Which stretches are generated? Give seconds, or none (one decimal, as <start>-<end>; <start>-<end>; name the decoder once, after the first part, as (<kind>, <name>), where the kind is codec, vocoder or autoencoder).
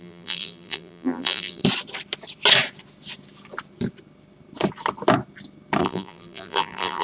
0.0-1.6 (vocoder, BigVGAN v2); 5.8-7.0